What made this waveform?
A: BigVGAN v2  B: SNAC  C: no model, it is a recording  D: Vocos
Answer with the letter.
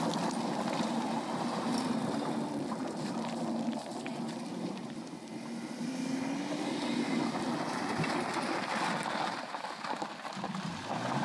C